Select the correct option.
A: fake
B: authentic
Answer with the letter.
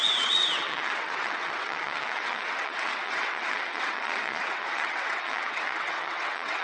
A